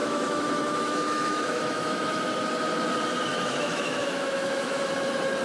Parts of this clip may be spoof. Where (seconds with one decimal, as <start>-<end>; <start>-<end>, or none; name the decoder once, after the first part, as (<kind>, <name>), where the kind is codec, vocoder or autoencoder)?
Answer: 0.0-2.2 (autoencoder, DAC-VAE); 3.3-4.9